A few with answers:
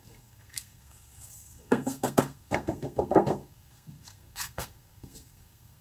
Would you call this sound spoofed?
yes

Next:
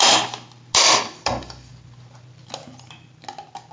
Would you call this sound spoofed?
no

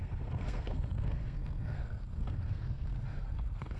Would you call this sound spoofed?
yes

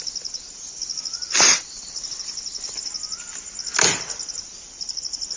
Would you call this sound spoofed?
no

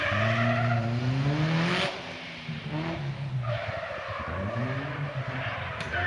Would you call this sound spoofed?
no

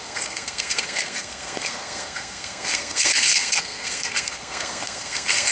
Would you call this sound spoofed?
yes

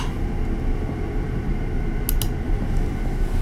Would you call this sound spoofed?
no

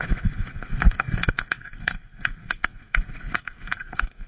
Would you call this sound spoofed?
yes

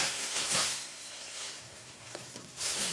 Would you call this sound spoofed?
yes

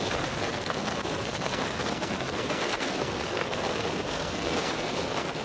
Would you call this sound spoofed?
yes